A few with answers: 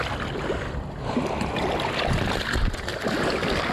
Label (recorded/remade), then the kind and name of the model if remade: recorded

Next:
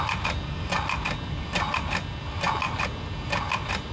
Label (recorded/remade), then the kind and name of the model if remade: recorded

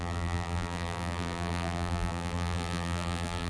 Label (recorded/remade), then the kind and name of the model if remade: remade, vocoder, BigVGAN v2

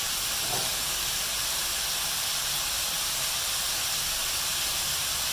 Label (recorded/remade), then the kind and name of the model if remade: recorded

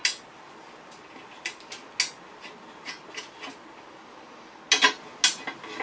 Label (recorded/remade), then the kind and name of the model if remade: recorded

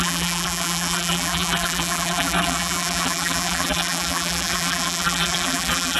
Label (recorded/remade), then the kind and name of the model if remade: remade, vocoder, BigVGAN v2